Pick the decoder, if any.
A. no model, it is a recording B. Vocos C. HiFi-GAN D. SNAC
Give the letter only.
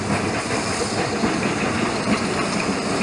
A